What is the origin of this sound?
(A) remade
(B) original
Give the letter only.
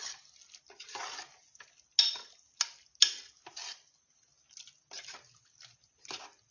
B